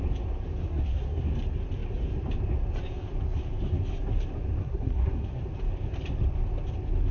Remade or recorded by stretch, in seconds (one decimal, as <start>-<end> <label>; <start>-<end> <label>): 0.0-0.7 recorded; 0.7-1.2 remade; 1.2-4.6 recorded; 4.6-5.4 remade; 5.4-7.1 recorded